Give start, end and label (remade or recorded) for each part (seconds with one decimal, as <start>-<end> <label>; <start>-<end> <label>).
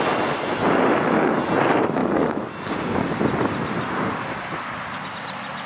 0.0-2.0 recorded; 2.0-2.5 remade; 2.5-5.7 recorded